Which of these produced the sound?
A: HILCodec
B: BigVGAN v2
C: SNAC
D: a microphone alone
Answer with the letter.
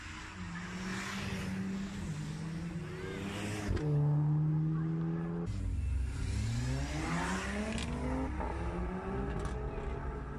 D